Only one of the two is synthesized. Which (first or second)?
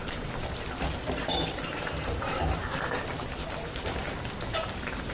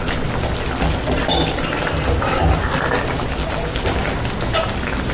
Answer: first